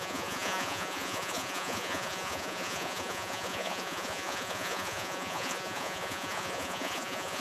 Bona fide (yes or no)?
no